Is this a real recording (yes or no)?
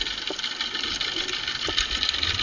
yes